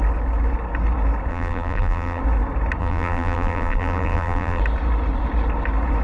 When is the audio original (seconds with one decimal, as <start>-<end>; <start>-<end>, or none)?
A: 0.0-1.3; 2.2-2.8; 4.6-6.0